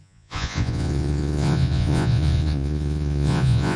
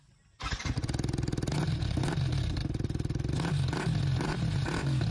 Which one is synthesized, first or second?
first